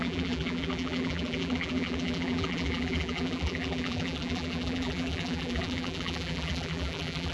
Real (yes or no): no